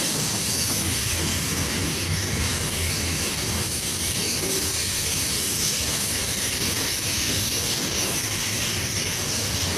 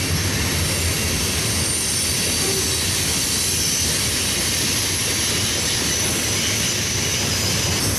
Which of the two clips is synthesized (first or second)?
first